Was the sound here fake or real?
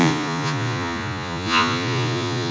fake